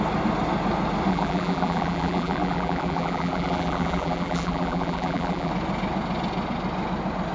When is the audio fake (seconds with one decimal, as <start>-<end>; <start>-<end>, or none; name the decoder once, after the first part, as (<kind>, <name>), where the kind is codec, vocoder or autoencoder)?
1.1-5.5 (vocoder, BigVGAN v2)